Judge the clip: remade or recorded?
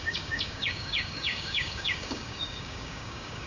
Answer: remade